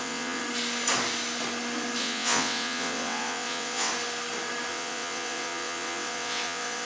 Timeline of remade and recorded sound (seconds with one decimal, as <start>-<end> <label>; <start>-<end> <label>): 0.0-0.4 remade; 0.4-2.0 recorded; 2.0-3.9 remade; 3.9-4.7 recorded; 4.7-6.8 remade